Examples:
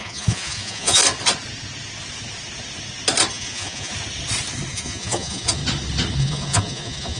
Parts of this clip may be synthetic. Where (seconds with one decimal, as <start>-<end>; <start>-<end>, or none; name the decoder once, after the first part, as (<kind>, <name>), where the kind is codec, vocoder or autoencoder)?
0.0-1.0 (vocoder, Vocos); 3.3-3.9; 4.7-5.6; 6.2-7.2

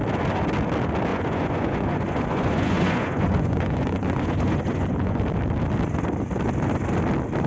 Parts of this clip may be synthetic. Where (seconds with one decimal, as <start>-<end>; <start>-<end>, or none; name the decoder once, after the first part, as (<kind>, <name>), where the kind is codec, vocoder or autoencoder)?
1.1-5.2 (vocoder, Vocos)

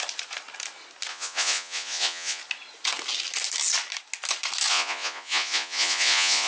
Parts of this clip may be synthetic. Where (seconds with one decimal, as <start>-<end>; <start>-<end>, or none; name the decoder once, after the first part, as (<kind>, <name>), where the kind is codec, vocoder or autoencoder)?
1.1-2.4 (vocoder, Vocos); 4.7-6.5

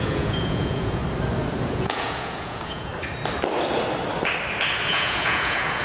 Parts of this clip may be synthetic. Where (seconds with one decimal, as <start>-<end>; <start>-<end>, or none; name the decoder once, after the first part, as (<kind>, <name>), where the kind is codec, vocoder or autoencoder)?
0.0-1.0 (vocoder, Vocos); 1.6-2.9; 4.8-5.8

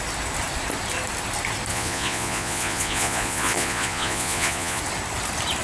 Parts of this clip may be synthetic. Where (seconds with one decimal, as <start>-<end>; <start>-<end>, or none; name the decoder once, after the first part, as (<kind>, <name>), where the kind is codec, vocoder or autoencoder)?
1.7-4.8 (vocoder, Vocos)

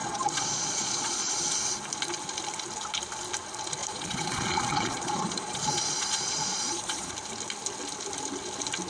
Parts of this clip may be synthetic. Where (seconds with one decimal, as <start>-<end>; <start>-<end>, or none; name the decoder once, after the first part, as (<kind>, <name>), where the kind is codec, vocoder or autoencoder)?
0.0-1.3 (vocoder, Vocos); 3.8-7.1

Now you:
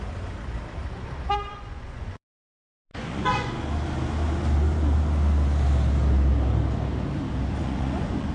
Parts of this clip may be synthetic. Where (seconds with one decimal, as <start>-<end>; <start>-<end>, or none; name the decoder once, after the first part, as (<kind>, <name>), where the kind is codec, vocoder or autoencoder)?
1.5-2.3 (vocoder, Vocos); 2.9-3.5; 7.6-8.3

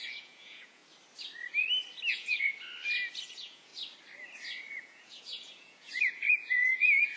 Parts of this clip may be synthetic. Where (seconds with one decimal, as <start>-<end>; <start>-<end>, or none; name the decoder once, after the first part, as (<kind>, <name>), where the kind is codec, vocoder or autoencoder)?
0.0-0.8 (vocoder, Vocos); 2.1-2.5; 3.3-3.7; 4.8-7.2